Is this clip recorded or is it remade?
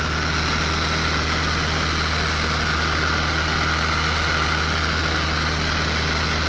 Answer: recorded